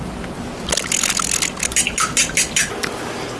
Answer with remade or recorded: recorded